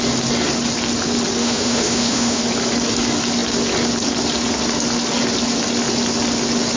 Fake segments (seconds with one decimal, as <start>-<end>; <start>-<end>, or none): 1.4-2.4